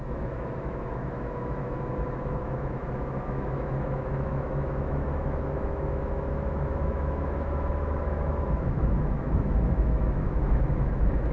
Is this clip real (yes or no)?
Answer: no